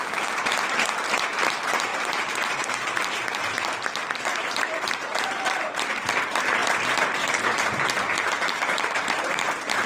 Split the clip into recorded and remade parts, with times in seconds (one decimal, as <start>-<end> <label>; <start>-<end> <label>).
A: 0.0-9.9 remade